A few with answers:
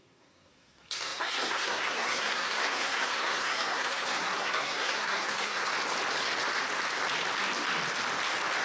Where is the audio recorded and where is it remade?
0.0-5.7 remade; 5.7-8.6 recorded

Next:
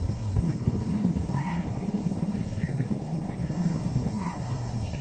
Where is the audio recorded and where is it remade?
0.0-5.0 remade